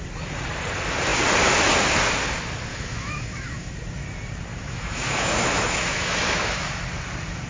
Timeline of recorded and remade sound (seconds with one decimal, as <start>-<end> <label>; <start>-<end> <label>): 0.0-2.7 recorded; 2.7-3.7 remade; 3.7-4.5 recorded; 4.5-6.8 remade; 6.8-7.5 recorded